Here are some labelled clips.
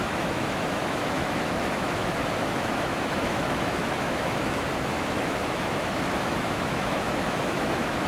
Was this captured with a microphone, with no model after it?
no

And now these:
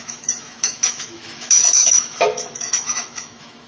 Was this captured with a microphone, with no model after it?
no